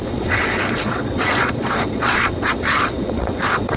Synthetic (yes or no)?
yes